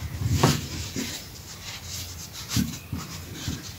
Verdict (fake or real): fake